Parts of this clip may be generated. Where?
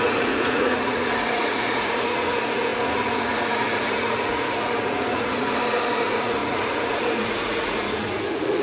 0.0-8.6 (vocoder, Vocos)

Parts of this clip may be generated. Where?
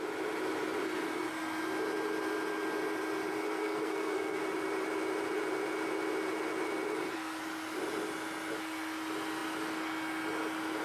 3.5-4.4 (codec, SNAC)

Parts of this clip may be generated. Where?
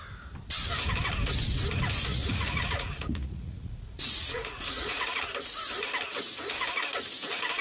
2.1-5.2 (vocoder, Vocos)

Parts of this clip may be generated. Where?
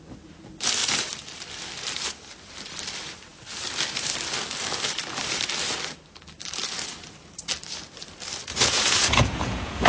8.5-9.9 (vocoder, Vocos)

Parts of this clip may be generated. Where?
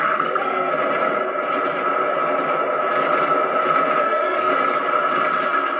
0.0-0.7 (codec, SNAC); 4.0-4.5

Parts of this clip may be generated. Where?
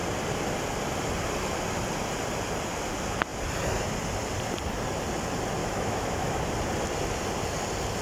5.6-6.4 (autoencoder, DAC-VAE)